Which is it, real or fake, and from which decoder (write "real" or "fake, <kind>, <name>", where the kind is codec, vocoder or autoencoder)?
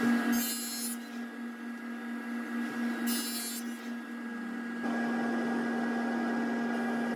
real